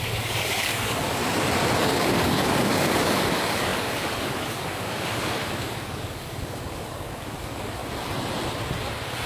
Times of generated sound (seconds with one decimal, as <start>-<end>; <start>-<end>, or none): 0.0-1.2; 1.8-7.8